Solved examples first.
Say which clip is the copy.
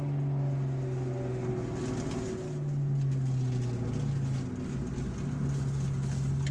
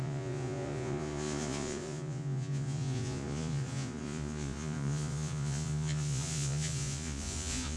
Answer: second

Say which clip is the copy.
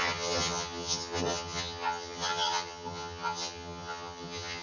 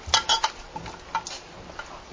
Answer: first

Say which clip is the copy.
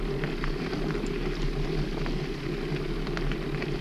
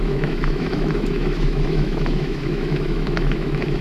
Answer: second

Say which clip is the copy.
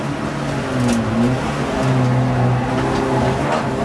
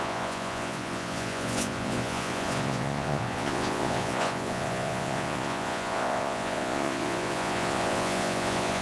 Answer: second